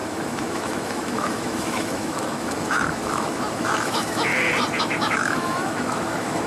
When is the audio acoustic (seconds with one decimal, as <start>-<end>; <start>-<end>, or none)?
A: 4.3-4.8